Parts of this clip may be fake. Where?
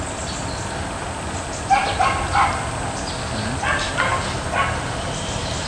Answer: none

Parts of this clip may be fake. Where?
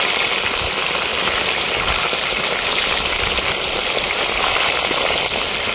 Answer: none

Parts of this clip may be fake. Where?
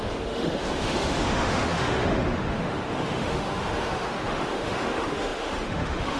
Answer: 0.0-6.2 (autoencoder, DAC-VAE)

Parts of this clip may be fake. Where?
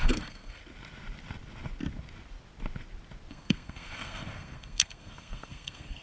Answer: 0.0-0.6 (codec, SNAC); 3.3-6.0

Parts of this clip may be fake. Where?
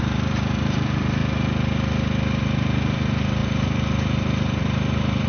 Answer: 0.0-1.2 (vocoder, BigVGAN v2); 2.4-5.3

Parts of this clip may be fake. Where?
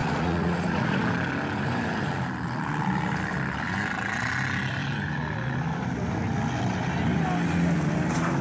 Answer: 0.0-1.0 (vocoder, Vocos)